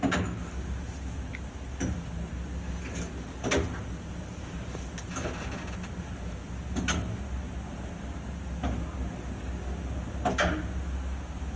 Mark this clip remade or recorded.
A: recorded